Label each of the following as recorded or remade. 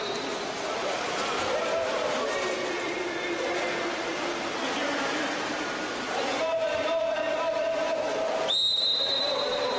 remade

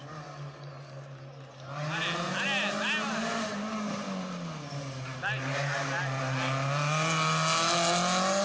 recorded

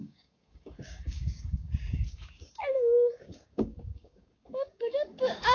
remade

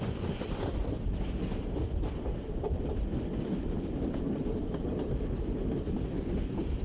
recorded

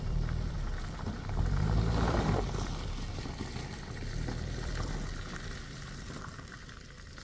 remade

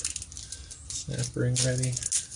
recorded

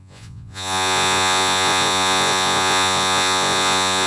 remade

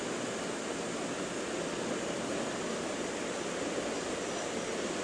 recorded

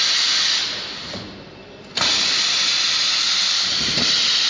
recorded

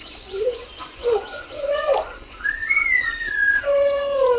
remade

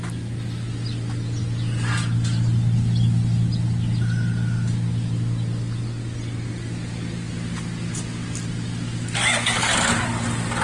recorded